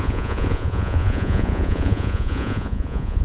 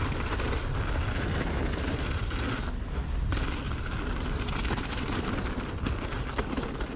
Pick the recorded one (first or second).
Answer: second